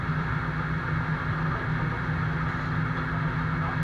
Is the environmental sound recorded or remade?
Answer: recorded